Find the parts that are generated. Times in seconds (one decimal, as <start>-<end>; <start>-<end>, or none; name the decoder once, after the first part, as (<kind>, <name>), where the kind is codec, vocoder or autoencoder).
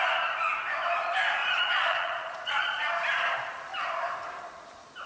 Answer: 1.4-2.8 (vocoder, Vocos)